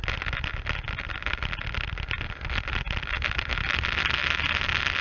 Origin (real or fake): real